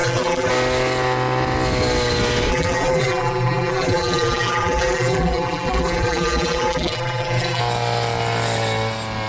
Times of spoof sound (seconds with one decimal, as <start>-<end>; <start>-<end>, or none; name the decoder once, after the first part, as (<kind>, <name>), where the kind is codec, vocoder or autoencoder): 0.0-0.5 (vocoder, BigVGAN v2); 2.5-7.6